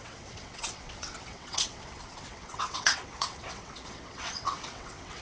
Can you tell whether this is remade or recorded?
remade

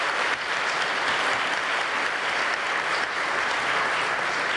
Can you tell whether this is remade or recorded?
remade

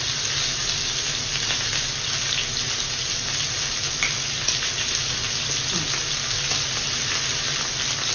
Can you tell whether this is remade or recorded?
recorded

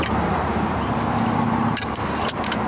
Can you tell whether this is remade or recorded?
remade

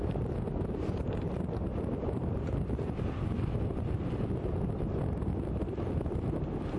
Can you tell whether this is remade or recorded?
recorded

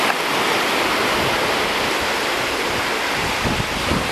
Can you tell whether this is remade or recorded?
recorded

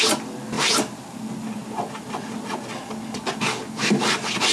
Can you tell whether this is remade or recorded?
recorded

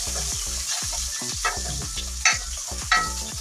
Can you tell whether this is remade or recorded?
recorded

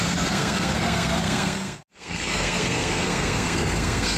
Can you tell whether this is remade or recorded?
remade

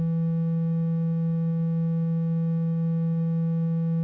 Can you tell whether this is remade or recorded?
recorded